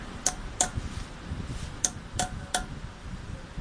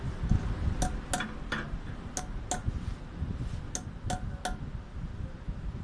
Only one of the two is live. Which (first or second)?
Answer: second